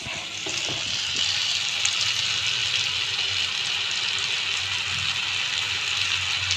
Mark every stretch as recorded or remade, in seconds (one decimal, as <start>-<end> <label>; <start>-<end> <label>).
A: 0.0-6.6 recorded